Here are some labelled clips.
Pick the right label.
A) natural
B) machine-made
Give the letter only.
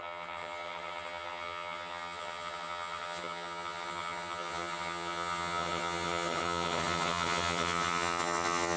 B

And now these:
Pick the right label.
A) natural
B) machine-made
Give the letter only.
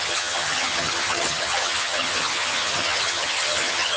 B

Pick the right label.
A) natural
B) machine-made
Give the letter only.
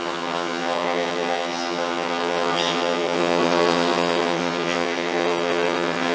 B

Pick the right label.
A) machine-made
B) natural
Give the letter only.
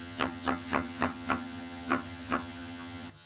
A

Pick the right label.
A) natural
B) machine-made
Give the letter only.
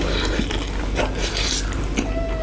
A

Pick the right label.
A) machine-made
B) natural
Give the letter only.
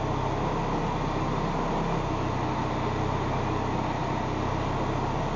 B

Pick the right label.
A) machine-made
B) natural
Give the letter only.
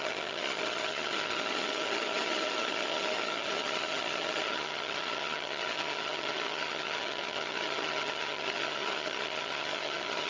A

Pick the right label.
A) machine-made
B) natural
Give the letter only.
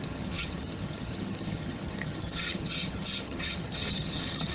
A